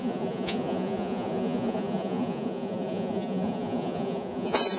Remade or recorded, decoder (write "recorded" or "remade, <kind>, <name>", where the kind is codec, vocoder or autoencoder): remade, vocoder, Vocos